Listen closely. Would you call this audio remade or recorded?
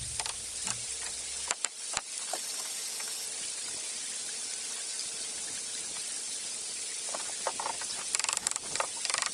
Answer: recorded